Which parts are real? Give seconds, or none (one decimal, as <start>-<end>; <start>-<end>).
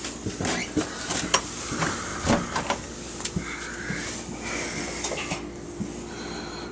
0.0-6.7